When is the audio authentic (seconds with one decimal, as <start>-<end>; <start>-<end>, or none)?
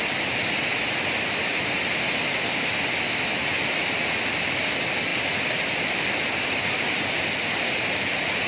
0.0-8.5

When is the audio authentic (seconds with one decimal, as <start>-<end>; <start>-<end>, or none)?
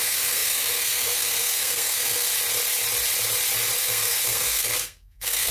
2.3-3.8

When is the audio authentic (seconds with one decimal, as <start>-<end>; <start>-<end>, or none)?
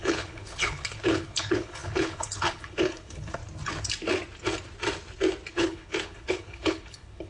3.4-5.5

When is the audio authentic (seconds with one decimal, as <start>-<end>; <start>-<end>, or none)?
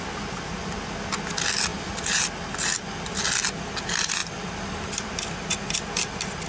0.0-1.7; 2.2-4.2; 5.1-6.5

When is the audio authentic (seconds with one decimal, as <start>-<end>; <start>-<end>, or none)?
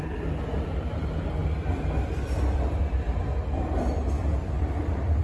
1.4-2.2; 3.1-4.4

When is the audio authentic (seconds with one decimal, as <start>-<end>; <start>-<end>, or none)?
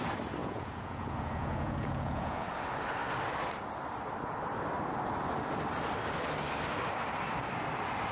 0.0-0.4; 2.5-8.1